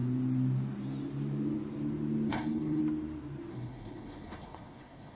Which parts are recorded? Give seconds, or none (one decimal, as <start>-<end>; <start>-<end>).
0.0-2.3; 2.8-3.5